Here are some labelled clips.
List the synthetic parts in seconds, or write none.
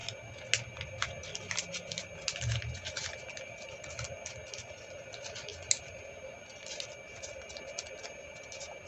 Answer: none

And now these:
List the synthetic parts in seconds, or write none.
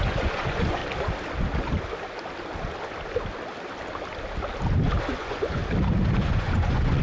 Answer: 0.0-0.8 (vocoder, Vocos); 5.0-5.6; 6.2-7.0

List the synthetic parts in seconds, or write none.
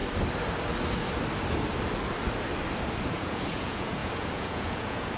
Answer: 3.1-5.2 (vocoder, Vocos)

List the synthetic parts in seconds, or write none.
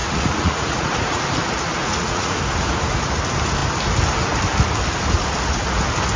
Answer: 0.0-1.2 (vocoder, Vocos); 1.8-2.4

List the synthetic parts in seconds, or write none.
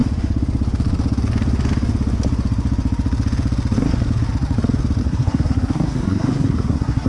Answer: 5.0-7.1 (codec, SNAC)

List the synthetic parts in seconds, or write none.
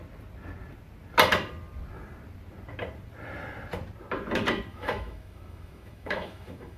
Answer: 4.7-6.8 (autoencoder, DAC-VAE)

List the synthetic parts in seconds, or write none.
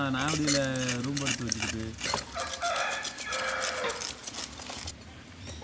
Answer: none